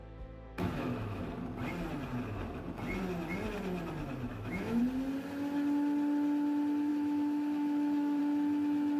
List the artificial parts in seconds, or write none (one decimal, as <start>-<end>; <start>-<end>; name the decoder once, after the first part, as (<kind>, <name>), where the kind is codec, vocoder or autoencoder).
0.0-1.2 (autoencoder, DAC-VAE); 4.3-4.8; 6.9-8.2